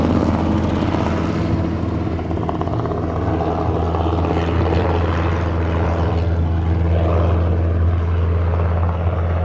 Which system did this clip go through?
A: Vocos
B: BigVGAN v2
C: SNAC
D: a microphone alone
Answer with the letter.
D